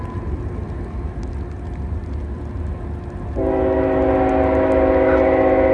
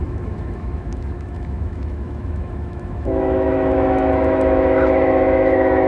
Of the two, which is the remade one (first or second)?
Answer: second